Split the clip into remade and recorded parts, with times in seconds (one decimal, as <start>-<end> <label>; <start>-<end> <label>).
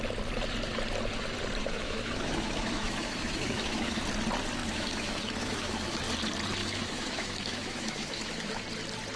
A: 0.0-1.6 recorded; 1.6-4.0 remade; 4.0-4.6 recorded; 4.6-6.0 remade; 6.0-6.6 recorded; 6.6-8.6 remade; 8.6-9.2 recorded